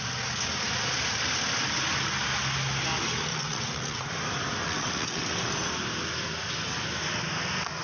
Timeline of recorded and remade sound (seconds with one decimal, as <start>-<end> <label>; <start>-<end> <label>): 0.0-3.3 recorded; 3.3-4.1 remade; 4.1-4.6 recorded; 4.6-5.5 remade; 5.5-7.8 recorded